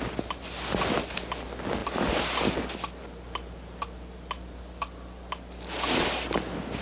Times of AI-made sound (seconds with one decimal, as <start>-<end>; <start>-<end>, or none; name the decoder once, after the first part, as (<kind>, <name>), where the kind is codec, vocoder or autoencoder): none